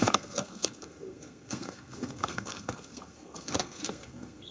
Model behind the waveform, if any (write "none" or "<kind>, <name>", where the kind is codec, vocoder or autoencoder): codec, SNAC